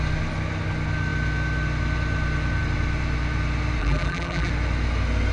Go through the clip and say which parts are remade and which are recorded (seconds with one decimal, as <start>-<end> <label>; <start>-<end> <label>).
0.0-3.8 recorded; 3.8-4.5 remade; 4.5-5.3 recorded